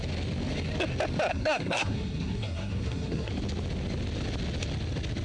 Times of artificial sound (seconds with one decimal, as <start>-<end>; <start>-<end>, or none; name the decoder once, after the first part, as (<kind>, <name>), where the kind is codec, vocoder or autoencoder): 1.3-3.3 (codec, SNAC)